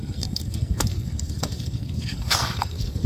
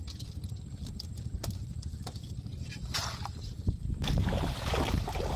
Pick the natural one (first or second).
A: second